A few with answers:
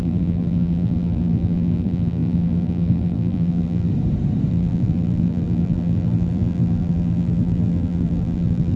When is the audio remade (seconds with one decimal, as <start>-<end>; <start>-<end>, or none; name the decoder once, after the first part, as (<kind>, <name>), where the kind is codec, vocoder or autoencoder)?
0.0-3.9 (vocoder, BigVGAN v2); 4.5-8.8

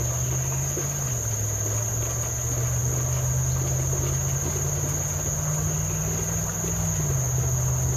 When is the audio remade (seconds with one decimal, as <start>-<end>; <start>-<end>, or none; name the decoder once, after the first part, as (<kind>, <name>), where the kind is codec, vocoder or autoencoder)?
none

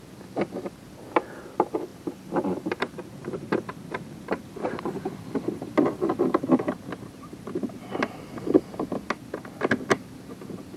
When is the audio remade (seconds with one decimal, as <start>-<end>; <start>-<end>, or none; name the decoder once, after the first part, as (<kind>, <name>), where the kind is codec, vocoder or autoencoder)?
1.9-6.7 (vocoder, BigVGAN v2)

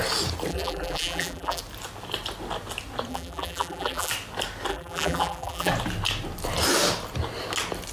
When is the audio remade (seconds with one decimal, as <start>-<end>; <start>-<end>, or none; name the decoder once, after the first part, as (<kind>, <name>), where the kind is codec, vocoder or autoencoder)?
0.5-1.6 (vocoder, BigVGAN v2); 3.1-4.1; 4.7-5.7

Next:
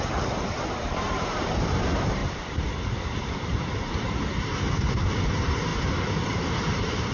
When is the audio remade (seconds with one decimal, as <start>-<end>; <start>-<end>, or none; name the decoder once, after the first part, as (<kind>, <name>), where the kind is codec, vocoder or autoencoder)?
0.0-5.7 (vocoder, BigVGAN v2); 6.3-7.1

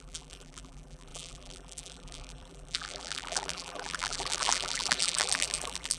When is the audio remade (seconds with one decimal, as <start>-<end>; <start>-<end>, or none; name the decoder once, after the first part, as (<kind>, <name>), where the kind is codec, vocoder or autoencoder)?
0.0-6.0 (vocoder, BigVGAN v2)

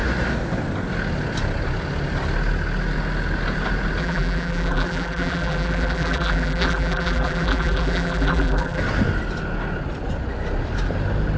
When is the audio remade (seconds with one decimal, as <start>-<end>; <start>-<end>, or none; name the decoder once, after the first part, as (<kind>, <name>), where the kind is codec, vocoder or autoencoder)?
4.0-8.8 (vocoder, BigVGAN v2)

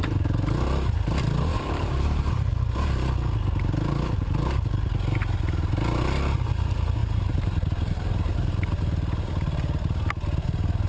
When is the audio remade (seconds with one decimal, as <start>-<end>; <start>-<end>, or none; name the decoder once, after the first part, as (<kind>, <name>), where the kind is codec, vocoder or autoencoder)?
1.5-2.5 (vocoder, BigVGAN v2); 7.0-9.3